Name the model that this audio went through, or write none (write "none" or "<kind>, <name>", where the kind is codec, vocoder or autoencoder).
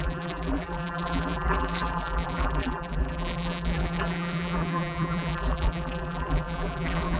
vocoder, BigVGAN v2